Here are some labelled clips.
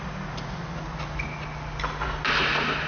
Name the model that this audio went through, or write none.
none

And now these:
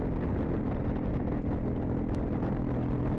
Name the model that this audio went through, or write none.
none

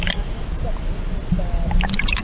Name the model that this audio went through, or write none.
none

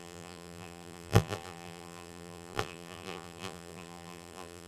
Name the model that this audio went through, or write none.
vocoder, BigVGAN v2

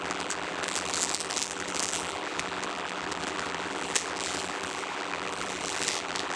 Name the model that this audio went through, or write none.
vocoder, BigVGAN v2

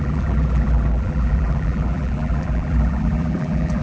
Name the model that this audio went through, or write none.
vocoder, BigVGAN v2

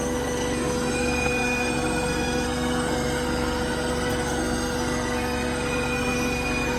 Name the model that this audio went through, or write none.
codec, SNAC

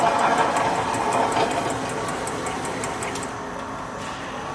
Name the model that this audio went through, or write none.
none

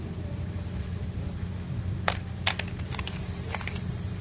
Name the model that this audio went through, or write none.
none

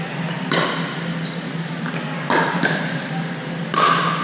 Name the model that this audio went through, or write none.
none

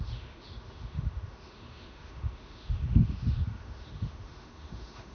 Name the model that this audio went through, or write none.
autoencoder, DAC-VAE